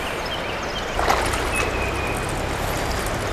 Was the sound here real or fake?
real